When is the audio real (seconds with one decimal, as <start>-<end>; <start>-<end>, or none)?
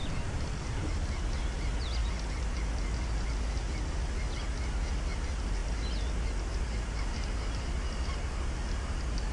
0.0-9.3